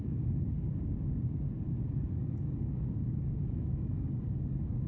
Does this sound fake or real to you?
fake